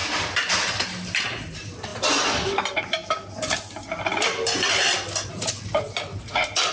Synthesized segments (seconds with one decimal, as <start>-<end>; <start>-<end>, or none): none